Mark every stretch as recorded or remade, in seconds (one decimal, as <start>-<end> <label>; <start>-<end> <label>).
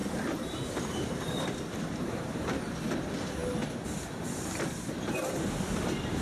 0.0-2.6 remade; 2.6-6.2 recorded